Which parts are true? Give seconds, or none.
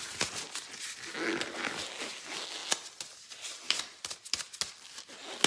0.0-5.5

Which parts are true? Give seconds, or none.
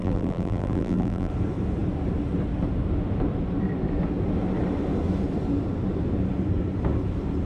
1.3-7.5